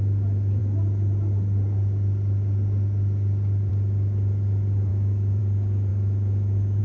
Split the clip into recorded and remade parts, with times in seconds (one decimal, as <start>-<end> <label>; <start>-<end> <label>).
0.0-4.9 recorded; 4.9-5.4 remade; 5.4-5.9 recorded; 5.9-6.8 remade